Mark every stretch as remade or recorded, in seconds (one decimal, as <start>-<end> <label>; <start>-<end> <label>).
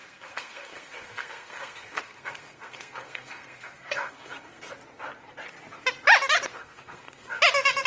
0.0-4.7 remade; 4.7-6.5 recorded; 6.5-7.4 remade; 7.4-7.9 recorded